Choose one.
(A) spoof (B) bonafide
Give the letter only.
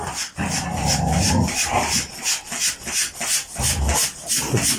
B